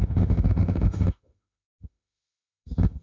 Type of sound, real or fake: fake